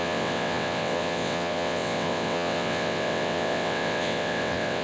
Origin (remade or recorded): remade